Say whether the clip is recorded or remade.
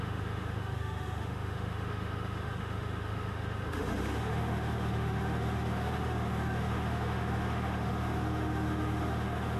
remade